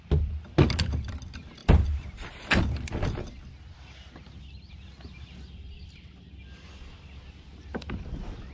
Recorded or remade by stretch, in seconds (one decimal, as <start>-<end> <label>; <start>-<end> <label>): 0.0-8.5 recorded